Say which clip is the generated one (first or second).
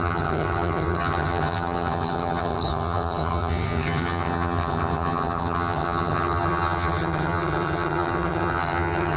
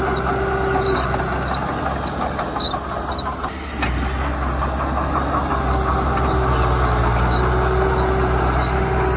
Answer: first